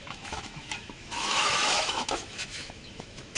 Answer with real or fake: fake